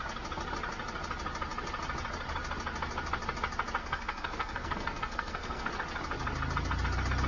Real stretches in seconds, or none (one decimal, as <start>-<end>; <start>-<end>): 0.0-3.8; 5.7-7.3